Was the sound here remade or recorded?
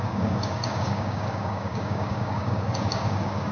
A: remade